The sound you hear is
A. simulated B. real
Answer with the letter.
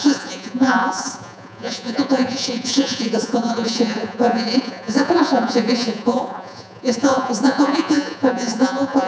A